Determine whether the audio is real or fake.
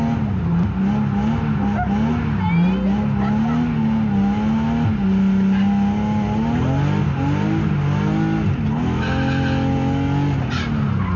real